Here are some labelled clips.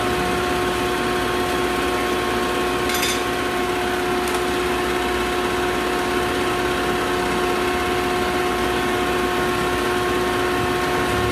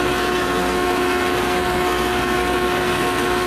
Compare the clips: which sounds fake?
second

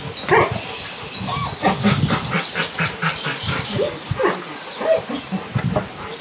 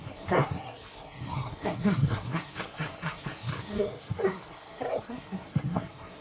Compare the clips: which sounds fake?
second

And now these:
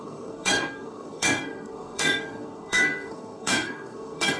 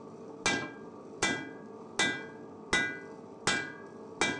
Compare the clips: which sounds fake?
first